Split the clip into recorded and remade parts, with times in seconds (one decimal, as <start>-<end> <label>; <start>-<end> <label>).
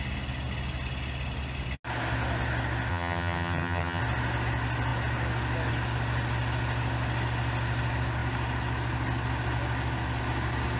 0.0-2.9 recorded; 2.9-4.0 remade; 4.0-10.8 recorded